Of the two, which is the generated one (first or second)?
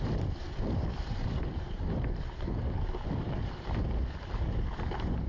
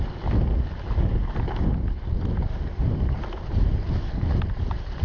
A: first